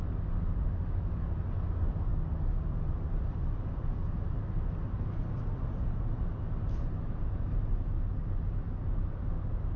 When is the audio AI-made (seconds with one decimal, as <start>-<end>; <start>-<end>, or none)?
none